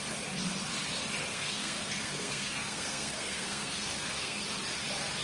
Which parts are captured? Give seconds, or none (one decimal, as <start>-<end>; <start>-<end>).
0.0-1.3; 4.4-5.2